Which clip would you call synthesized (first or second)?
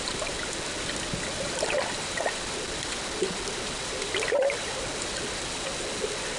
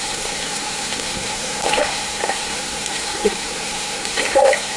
second